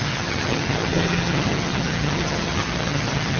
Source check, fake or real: fake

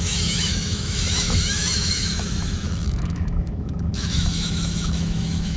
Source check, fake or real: fake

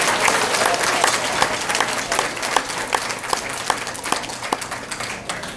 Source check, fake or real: real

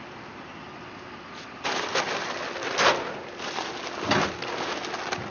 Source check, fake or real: real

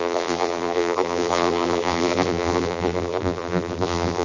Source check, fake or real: fake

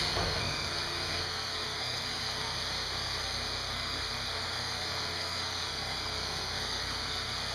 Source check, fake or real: fake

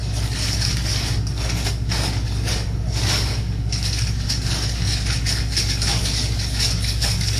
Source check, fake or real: fake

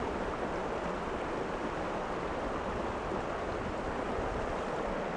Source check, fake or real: real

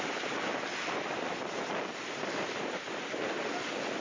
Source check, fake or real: real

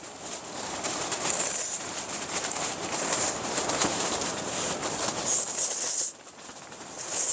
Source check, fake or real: fake